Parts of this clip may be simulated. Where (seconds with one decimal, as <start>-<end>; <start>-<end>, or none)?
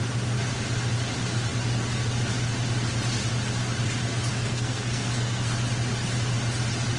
4.3-5.5